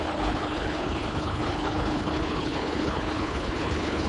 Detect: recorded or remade remade